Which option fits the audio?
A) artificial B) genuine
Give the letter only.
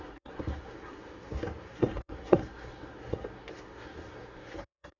A